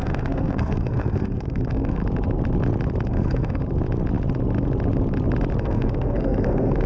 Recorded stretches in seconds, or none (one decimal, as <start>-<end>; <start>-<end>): 2.0-3.1; 3.6-5.6

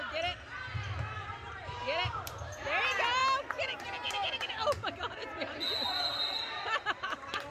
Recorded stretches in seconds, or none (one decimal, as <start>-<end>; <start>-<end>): 0.0-1.2; 1.8-7.5

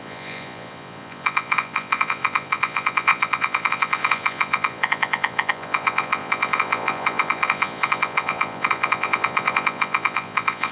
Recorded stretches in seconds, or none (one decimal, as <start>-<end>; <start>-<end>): none

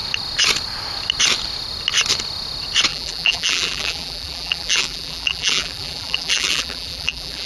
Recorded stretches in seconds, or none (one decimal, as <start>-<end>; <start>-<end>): 0.0-2.9